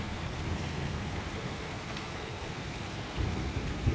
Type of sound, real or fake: fake